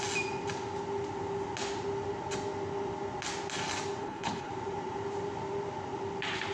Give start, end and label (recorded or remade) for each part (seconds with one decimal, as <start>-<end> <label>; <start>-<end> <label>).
0.0-4.0 recorded; 4.0-4.5 remade; 4.5-6.5 recorded